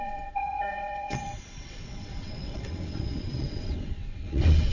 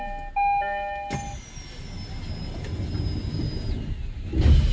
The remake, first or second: first